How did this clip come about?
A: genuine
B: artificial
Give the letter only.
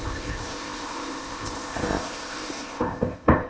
B